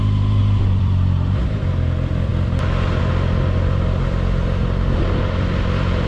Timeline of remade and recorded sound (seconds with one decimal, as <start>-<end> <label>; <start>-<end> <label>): 0.0-0.4 recorded; 0.4-1.4 remade; 1.4-6.1 recorded